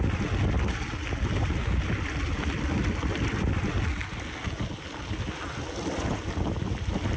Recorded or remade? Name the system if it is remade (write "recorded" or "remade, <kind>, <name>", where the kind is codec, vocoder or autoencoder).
recorded